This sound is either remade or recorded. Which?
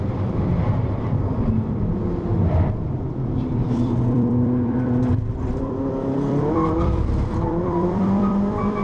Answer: remade